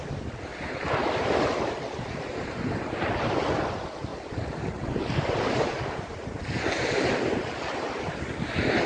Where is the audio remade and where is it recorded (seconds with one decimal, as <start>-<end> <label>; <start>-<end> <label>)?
0.0-0.5 recorded; 0.5-3.3 remade; 3.3-4.1 recorded; 4.1-8.1 remade; 8.1-8.9 recorded